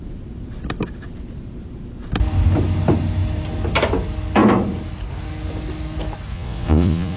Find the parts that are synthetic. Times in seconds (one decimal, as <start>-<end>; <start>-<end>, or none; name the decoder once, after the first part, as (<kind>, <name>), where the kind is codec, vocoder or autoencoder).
6.3-7.2 (vocoder, Vocos)